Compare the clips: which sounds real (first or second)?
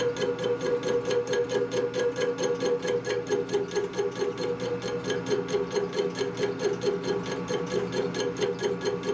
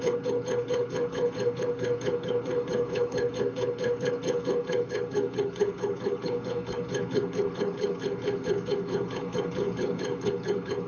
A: first